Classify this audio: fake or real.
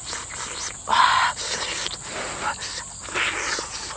real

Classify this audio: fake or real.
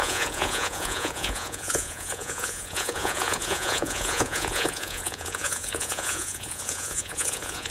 fake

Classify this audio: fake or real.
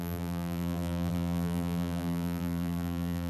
fake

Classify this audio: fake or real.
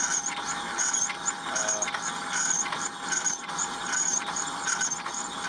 real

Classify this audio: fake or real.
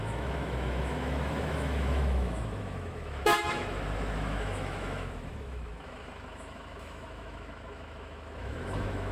fake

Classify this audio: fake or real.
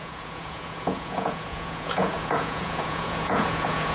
fake